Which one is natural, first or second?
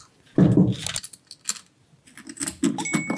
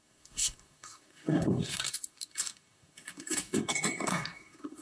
first